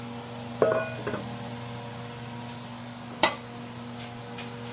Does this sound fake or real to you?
real